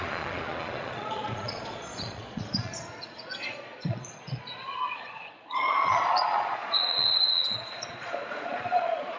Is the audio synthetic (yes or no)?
yes